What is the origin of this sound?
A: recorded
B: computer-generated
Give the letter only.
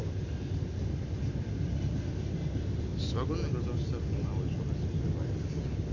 A